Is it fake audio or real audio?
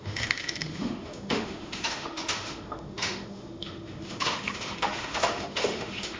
fake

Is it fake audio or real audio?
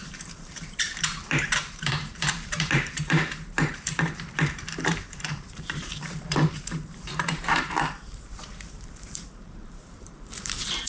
fake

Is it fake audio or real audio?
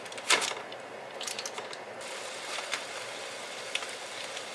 real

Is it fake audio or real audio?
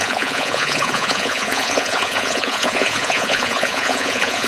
fake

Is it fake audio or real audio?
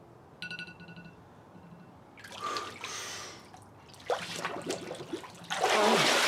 real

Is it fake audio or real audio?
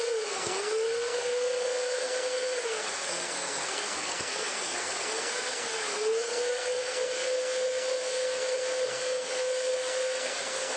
fake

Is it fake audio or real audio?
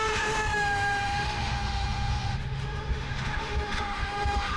fake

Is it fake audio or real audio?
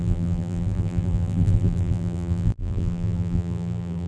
fake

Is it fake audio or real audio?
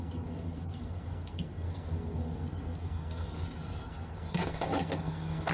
fake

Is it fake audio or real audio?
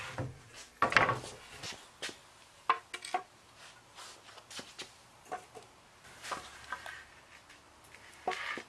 real